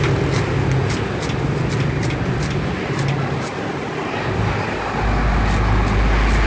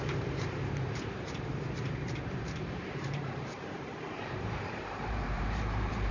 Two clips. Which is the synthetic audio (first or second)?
second